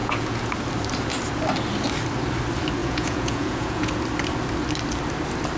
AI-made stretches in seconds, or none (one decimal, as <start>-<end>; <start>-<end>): 0.0-0.5; 2.8-3.9

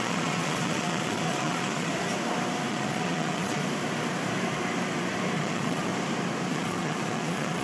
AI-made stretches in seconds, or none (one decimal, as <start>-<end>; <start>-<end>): 0.0-1.9; 2.7-3.6; 5.4-5.9; 6.5-7.6